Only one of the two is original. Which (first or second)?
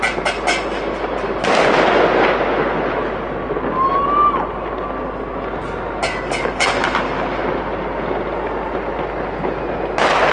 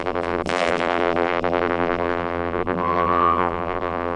first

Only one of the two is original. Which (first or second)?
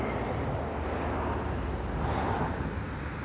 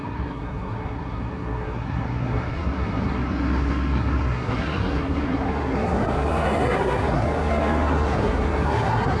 first